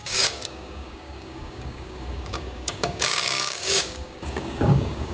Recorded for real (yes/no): no